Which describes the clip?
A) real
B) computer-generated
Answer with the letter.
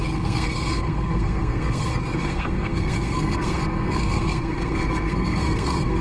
B